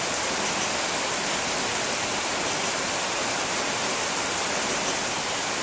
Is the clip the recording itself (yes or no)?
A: yes